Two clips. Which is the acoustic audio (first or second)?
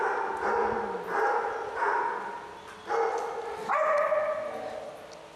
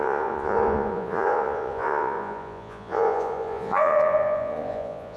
first